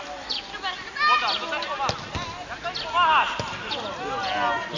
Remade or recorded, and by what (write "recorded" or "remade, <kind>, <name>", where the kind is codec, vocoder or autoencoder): recorded